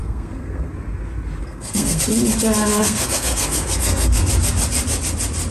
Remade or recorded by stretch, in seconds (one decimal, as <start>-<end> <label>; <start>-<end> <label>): 0.0-0.7 remade; 0.7-1.4 recorded; 1.4-2.0 remade; 2.0-2.7 recorded; 2.7-4.2 remade; 4.2-5.5 recorded